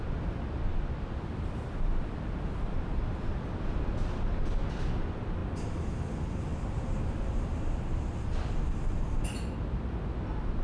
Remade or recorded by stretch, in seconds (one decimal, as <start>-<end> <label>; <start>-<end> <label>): 0.0-10.6 recorded